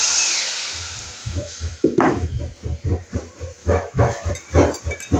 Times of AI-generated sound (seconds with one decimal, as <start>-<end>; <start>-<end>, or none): 1.2-2.4; 3.6-4.3